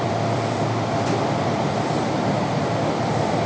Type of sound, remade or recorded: remade